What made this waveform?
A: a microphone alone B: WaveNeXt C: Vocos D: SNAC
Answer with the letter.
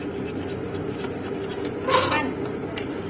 A